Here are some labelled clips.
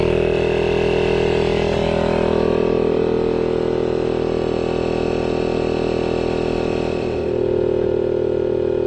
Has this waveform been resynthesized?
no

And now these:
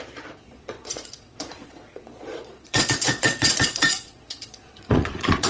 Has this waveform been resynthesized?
yes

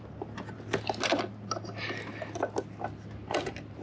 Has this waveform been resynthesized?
no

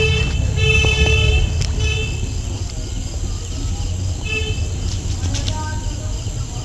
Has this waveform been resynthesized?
no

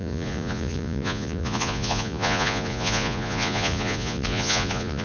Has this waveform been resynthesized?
yes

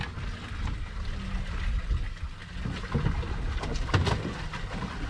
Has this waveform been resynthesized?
no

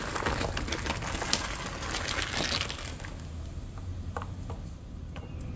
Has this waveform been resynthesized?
no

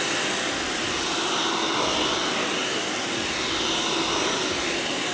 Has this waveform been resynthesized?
no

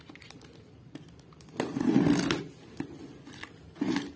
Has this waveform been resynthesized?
no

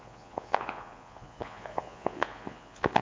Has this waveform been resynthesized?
yes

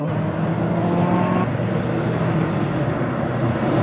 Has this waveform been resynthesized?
no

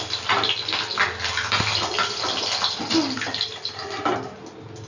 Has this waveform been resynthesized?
no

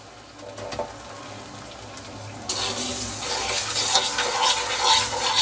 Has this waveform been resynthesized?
no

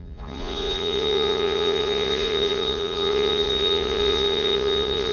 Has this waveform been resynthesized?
yes